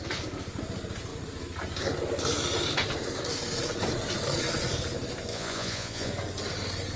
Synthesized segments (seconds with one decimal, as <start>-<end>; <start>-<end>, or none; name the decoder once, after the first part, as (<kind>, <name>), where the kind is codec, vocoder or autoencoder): 5.3-6.1 (vocoder, Vocos)